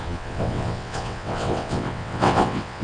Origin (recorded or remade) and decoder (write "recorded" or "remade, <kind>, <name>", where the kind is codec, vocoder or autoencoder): remade, vocoder, WaveNeXt